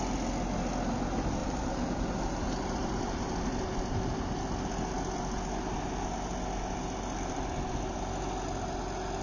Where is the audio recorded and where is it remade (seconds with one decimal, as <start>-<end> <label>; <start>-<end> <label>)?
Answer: 0.0-1.4 recorded; 1.4-3.4 remade; 3.4-9.2 recorded